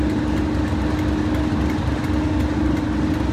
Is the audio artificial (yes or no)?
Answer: no